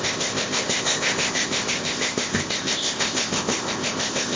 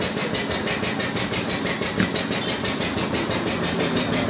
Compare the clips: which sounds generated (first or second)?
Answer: first